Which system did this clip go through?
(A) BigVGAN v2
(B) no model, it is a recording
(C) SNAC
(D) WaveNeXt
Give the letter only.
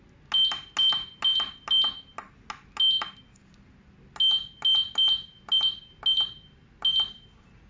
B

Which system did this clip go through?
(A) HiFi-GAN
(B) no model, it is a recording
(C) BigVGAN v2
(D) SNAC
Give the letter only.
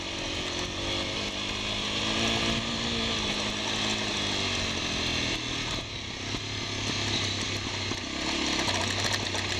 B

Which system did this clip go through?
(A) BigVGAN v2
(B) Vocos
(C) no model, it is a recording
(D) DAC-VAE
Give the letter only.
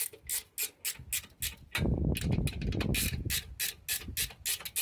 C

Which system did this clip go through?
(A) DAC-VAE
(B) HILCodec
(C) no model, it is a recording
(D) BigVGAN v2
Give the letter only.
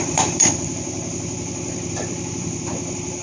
D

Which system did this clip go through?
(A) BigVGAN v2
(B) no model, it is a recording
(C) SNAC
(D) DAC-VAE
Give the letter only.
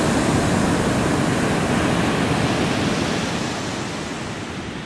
B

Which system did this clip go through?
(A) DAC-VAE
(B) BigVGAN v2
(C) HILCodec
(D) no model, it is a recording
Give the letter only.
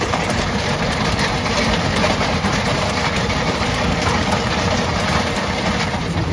B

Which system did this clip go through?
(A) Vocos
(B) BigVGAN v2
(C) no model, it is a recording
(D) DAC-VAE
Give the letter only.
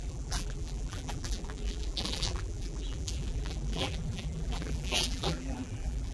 B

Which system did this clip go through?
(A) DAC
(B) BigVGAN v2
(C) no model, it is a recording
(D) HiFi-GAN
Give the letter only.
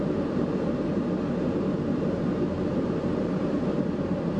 B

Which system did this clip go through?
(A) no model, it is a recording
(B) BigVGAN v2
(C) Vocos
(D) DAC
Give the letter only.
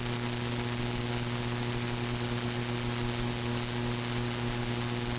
A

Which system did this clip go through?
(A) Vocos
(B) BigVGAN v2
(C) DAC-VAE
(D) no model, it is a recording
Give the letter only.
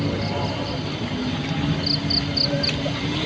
D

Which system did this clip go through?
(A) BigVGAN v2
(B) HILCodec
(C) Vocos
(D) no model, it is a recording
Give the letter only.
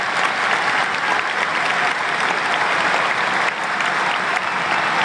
D